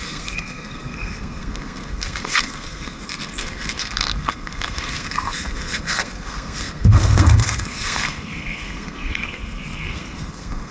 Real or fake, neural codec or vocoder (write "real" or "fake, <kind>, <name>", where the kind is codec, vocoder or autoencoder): fake, codec, SNAC